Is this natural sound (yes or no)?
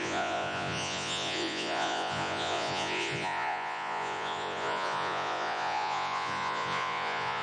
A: no